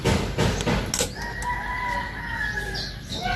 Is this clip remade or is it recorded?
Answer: recorded